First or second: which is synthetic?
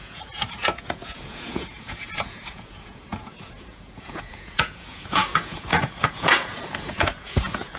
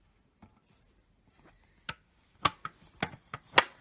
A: first